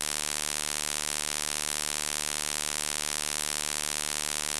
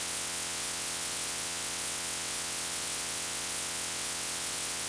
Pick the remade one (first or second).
second